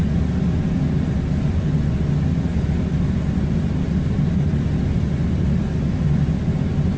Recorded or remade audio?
recorded